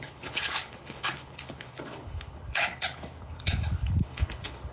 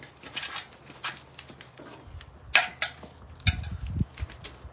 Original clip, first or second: second